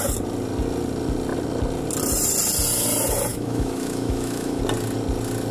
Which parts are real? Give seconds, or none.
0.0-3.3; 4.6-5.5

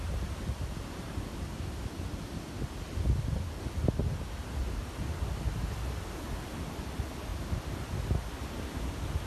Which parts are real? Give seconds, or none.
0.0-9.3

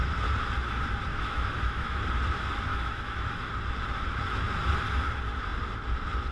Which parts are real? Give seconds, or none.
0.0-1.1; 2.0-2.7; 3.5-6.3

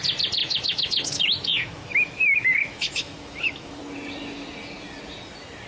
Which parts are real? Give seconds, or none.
0.0-0.4; 3.8-5.7

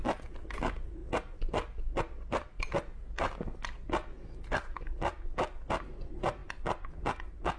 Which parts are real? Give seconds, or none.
0.0-7.6